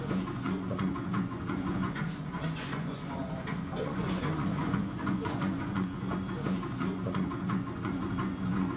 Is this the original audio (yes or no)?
no